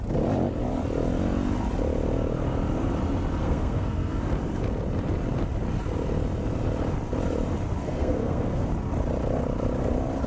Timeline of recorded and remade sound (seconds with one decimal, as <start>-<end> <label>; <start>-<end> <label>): 0.0-3.4 recorded; 3.4-4.2 remade; 4.2-7.8 recorded; 7.8-8.7 remade; 8.7-10.3 recorded